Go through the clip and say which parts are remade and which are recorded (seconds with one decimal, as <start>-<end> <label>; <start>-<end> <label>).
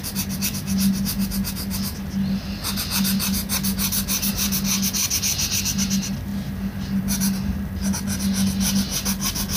0.0-9.6 recorded